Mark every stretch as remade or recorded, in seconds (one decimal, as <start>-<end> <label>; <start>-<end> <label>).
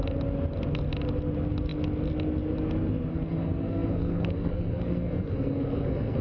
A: 0.0-3.1 recorded; 3.1-6.2 remade